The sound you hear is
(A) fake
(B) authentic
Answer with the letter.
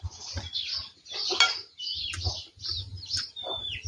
B